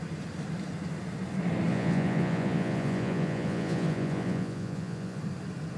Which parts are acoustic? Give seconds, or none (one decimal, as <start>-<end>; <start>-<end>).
0.0-1.7; 5.2-5.8